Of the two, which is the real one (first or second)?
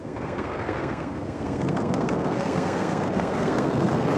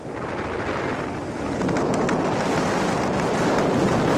second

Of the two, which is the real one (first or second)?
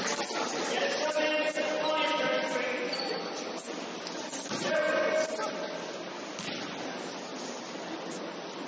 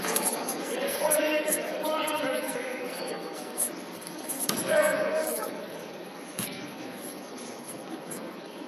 first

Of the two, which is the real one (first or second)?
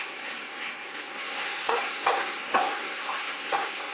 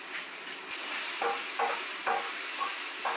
second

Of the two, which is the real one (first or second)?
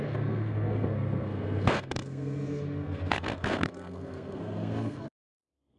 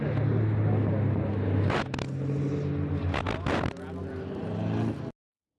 second